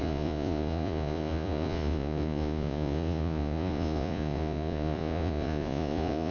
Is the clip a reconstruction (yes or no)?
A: yes